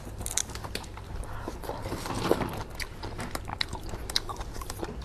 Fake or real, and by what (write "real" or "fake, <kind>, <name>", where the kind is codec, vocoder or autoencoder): real